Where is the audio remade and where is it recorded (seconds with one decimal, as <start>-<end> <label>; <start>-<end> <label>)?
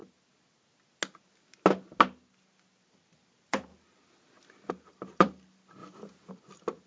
0.0-2.9 recorded; 2.9-3.7 remade; 3.7-4.7 recorded; 4.7-5.8 remade; 5.8-6.3 recorded; 6.3-6.9 remade